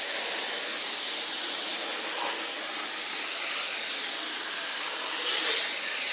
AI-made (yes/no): no